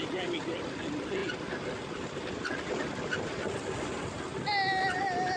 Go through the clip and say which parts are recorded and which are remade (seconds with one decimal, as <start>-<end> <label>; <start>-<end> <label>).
0.0-5.4 recorded